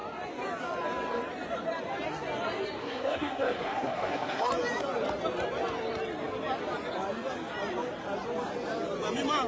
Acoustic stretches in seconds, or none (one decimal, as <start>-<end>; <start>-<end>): 0.0-2.8; 4.5-9.5